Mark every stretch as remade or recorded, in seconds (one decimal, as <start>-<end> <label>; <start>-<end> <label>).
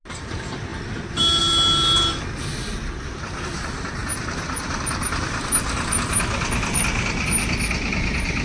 0.0-8.4 recorded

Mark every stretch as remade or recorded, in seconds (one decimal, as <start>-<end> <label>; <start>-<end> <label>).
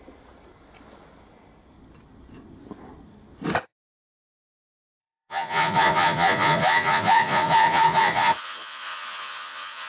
0.0-5.0 recorded; 5.0-9.9 remade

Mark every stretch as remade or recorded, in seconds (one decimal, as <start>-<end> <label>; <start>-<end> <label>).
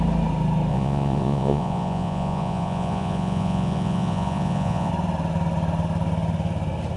0.0-0.7 recorded; 0.7-4.9 remade; 4.9-7.0 recorded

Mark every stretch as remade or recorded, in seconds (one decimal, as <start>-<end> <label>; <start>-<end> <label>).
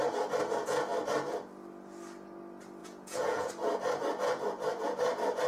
0.0-2.8 recorded; 2.8-3.5 remade; 3.5-5.5 recorded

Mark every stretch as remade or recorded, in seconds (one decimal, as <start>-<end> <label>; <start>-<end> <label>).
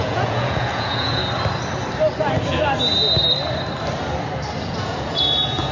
0.0-1.2 remade; 1.2-4.6 recorded; 4.6-5.7 remade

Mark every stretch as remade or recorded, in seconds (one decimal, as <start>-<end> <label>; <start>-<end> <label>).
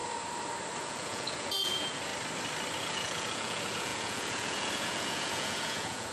0.0-0.8 recorded; 0.8-2.1 remade; 2.1-2.8 recorded; 2.8-6.1 remade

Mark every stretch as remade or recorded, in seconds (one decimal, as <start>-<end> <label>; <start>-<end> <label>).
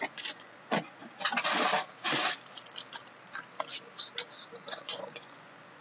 0.0-1.0 remade; 1.0-4.5 recorded; 4.5-5.8 remade